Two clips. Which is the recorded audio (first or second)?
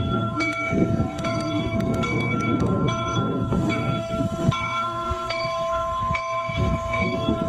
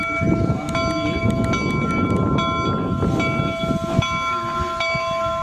second